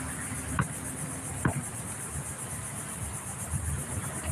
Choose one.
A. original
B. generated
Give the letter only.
A